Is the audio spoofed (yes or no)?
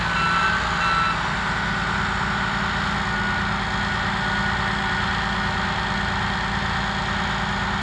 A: no